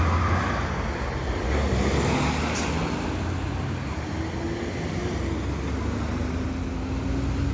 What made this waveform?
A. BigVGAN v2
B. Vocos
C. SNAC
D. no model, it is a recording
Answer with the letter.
D